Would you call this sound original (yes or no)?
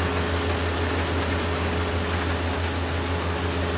yes